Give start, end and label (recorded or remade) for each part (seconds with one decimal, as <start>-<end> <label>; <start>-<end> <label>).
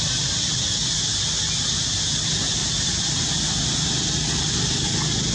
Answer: 0.0-2.6 recorded; 2.6-3.4 remade; 3.4-5.3 recorded